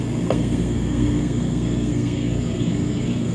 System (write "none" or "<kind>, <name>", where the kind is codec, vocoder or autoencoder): codec, SNAC